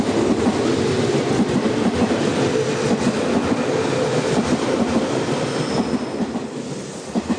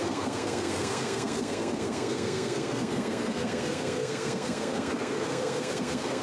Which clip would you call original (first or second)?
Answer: first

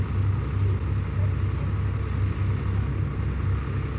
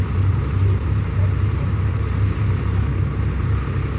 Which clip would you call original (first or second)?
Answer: first